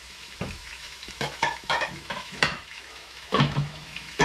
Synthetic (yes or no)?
yes